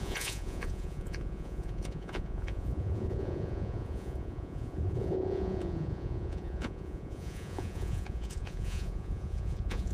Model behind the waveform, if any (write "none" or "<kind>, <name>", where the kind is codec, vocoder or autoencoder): vocoder, Vocos